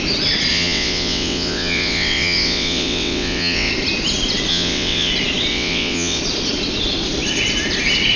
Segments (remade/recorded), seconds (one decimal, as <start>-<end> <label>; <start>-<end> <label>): 0.0-0.5 recorded; 0.5-3.7 remade; 3.7-4.5 recorded; 4.5-5.1 remade; 5.1-5.5 recorded; 5.5-6.2 remade; 6.2-8.2 recorded